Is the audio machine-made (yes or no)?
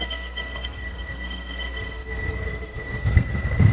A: yes